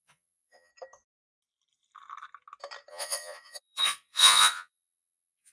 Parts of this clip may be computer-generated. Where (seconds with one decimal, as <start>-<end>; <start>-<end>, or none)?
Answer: 0.0-0.7; 2.9-5.5